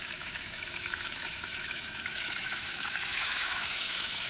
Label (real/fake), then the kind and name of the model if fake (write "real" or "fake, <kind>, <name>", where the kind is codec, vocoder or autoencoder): fake, autoencoder, DAC-VAE